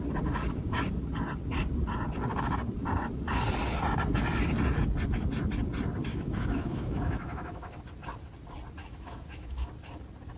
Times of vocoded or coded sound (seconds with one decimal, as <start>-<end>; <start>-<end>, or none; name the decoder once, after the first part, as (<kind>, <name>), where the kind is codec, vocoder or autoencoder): 6.1-7.8 (autoencoder, DAC-VAE); 8.8-9.7